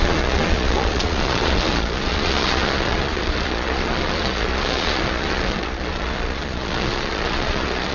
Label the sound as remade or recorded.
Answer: remade